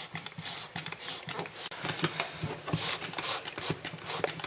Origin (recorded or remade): recorded